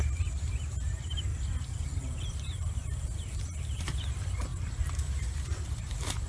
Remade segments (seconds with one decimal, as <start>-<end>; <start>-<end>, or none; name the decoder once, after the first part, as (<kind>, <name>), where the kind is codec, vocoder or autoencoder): 0.0-1.3 (vocoder, BigVGAN v2); 3.8-6.3